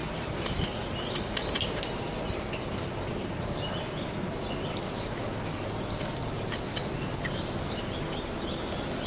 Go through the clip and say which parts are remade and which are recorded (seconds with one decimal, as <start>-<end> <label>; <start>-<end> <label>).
0.0-9.1 recorded